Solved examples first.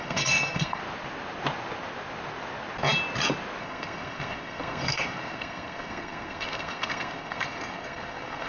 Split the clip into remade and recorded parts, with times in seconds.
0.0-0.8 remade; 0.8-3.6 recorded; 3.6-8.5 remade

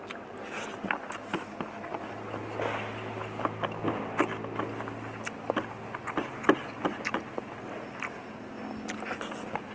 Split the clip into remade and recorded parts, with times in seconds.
0.0-9.7 recorded

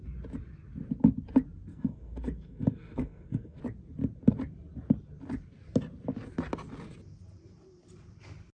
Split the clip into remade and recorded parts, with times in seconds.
0.0-1.7 recorded; 1.7-3.6 remade; 3.6-8.6 recorded

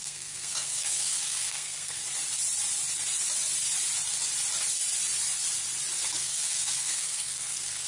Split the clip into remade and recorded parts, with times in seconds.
0.0-2.0 remade; 2.0-6.1 recorded; 6.1-7.9 remade

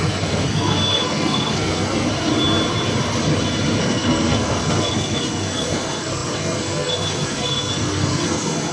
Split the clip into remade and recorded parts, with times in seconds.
0.0-2.1 remade; 2.1-3.8 recorded; 3.8-8.7 remade

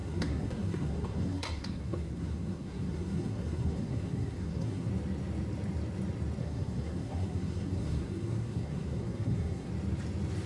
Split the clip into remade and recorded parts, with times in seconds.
0.0-4.9 remade; 4.9-6.4 recorded; 6.4-9.7 remade; 9.7-10.5 recorded

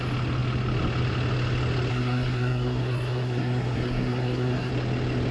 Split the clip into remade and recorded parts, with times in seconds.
0.0-1.9 recorded; 1.9-4.7 remade; 4.7-5.3 recorded

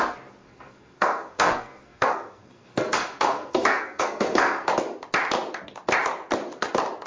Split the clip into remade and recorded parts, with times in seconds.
0.0-0.4 recorded; 0.4-4.7 remade; 4.7-7.1 recorded